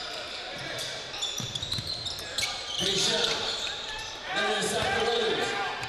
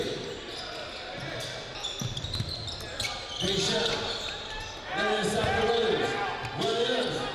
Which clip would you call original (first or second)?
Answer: second